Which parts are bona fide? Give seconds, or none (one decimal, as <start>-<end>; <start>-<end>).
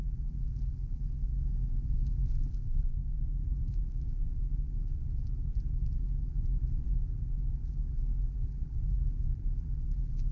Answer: none